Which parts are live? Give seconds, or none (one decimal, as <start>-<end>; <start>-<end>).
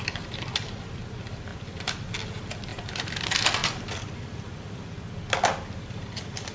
0.0-1.5; 2.1-2.7; 3.2-3.6; 4.1-6.5